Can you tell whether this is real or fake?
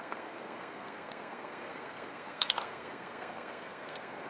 fake